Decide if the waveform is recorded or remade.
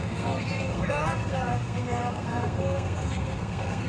remade